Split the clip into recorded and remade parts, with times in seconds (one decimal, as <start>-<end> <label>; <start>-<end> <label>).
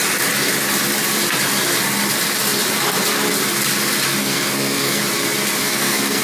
0.0-4.2 recorded; 4.2-5.0 remade; 5.0-5.6 recorded; 5.6-6.2 remade